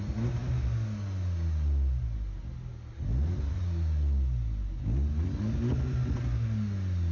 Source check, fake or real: real